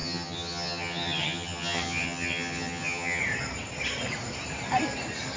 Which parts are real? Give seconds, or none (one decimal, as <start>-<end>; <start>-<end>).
3.2-5.4